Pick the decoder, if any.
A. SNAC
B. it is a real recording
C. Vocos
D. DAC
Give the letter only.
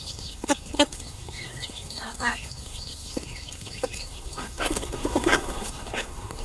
A